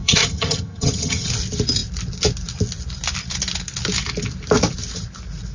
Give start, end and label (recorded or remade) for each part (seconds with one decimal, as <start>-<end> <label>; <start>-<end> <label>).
0.0-1.3 remade; 1.3-5.5 recorded